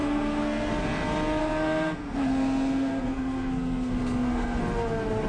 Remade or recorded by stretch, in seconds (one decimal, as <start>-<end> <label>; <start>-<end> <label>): 0.0-0.7 remade; 0.7-1.4 recorded; 1.4-4.6 remade; 4.6-5.3 recorded